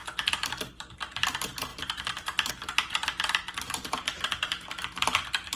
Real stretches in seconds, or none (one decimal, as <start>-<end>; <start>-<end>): 0.0-1.7; 2.5-5.6